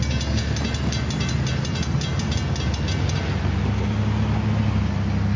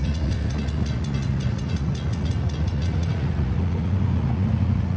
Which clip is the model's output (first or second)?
second